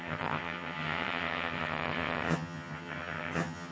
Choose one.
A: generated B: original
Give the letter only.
A